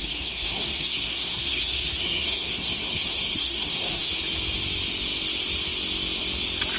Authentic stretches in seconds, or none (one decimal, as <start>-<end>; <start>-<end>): 4.1-6.8